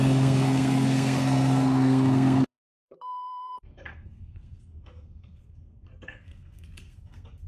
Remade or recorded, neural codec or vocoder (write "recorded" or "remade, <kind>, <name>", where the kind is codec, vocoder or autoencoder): remade, codec, SNAC